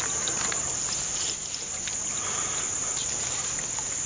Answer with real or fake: real